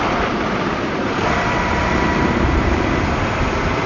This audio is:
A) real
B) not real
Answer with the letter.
B